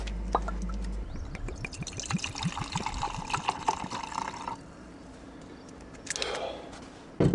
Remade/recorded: recorded